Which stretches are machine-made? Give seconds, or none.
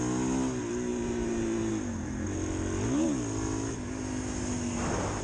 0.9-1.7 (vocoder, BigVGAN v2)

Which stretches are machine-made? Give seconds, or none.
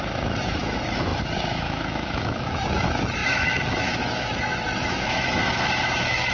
0.0-6.3 (autoencoder, DAC-VAE)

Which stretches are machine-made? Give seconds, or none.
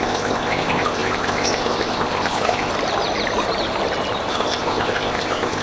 0.0-2.7 (codec, ZipCodec); 4.3-5.6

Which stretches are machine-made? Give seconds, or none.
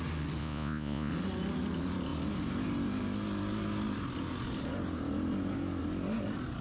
0.4-1.1 (vocoder, Vocos)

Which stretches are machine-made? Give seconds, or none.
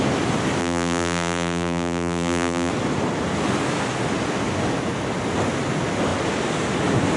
0.6-2.7 (vocoder, BigVGAN v2)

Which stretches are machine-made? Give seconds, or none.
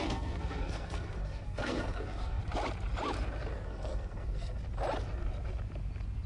0.0-2.4 (codec, SNAC); 3.5-4.6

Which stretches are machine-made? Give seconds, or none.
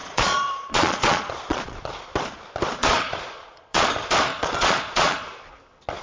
0.0-1.8 (vocoder, Vocos); 2.8-3.9; 4.3-5.5